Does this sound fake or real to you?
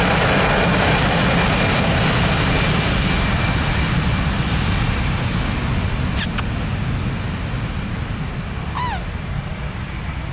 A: real